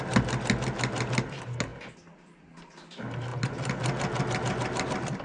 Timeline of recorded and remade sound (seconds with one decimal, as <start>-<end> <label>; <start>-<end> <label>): 0.0-5.2 recorded